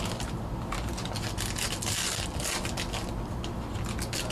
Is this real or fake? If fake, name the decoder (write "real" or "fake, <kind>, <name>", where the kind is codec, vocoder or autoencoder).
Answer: real